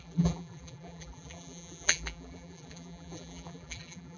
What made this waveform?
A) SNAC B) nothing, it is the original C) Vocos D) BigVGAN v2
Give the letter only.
D